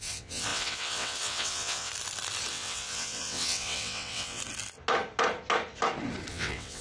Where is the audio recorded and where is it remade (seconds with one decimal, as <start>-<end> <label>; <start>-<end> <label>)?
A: 0.0-1.9 remade; 1.9-2.5 recorded; 2.5-4.4 remade; 4.4-6.3 recorded; 6.3-6.8 remade